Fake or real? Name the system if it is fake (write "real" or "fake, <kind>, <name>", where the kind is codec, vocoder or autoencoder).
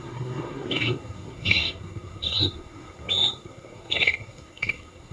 fake, codec, SNAC